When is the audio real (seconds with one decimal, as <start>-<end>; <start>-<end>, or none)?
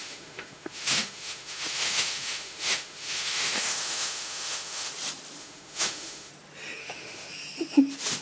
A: 4.9-5.4; 6.3-6.8; 7.3-8.2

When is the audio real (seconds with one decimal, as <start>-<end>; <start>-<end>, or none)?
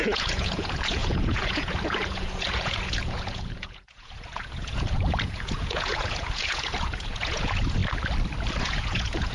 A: 7.8-8.6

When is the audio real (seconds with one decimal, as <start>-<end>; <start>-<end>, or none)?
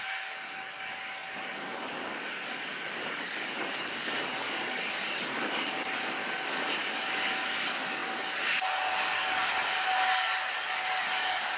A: 6.2-6.9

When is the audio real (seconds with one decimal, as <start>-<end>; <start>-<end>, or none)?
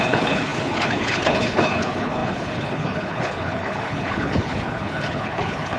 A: none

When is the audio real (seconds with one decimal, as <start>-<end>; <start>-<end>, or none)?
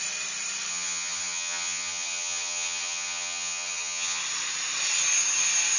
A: 0.0-0.7; 4.2-5.8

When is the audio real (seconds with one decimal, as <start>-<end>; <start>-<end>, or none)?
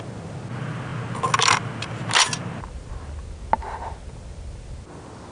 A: 0.0-5.3